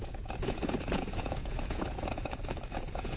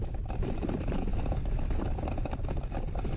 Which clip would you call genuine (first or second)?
second